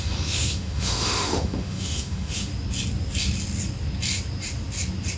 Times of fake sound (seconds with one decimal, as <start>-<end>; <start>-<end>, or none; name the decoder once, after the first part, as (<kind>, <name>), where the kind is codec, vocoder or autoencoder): 0.0-2.5 (autoencoder, DAC-VAE)